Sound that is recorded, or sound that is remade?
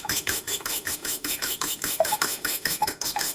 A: remade